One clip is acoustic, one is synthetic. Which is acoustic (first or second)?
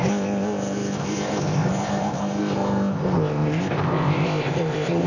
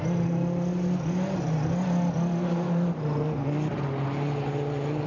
second